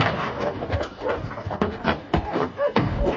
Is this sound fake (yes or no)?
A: yes